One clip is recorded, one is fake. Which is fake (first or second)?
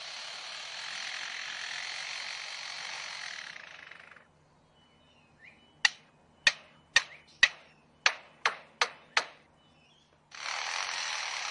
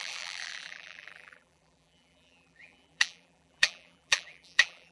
second